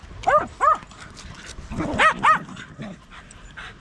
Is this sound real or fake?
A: real